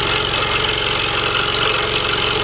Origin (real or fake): real